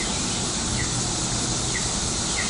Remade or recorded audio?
recorded